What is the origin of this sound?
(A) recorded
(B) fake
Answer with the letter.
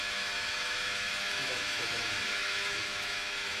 B